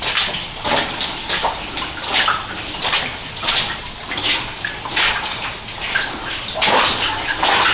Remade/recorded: recorded